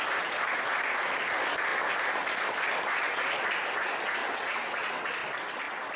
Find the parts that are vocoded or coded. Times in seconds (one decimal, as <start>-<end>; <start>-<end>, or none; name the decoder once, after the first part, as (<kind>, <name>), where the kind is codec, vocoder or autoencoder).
4.2-5.1 (vocoder, WaveNeXt)